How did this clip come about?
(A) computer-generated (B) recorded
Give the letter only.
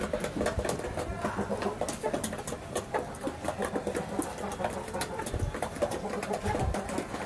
B